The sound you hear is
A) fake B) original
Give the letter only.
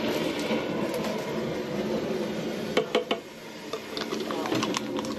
B